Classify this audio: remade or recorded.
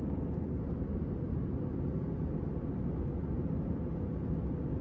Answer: recorded